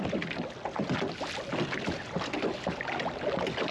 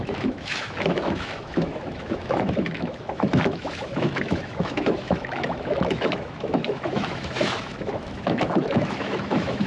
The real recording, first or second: first